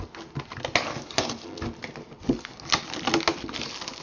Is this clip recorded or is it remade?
recorded